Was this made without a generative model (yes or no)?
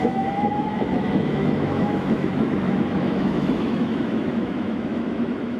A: no